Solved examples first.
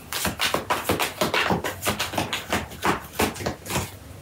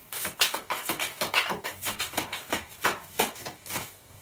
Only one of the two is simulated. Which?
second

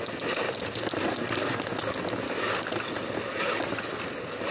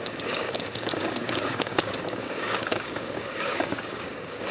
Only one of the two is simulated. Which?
second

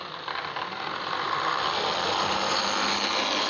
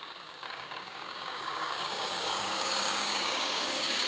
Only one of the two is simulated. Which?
second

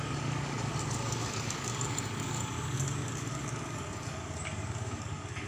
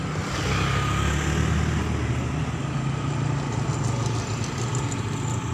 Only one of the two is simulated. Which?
first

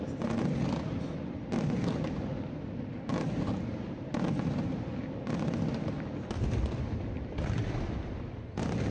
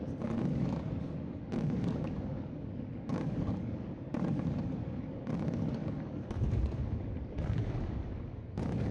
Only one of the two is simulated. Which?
second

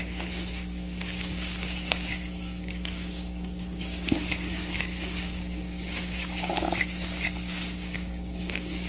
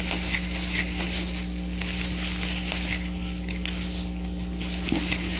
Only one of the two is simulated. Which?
first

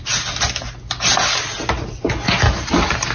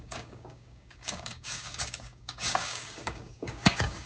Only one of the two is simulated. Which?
second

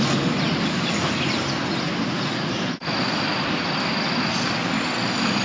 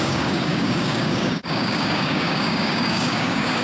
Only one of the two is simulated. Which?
second